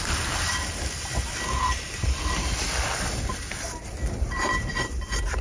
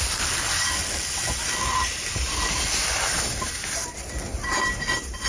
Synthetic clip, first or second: first